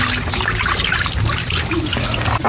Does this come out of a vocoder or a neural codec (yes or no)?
no